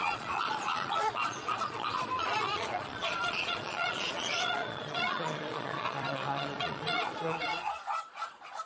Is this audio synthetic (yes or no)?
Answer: yes